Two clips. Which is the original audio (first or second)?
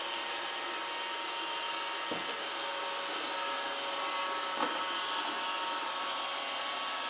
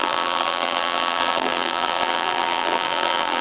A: first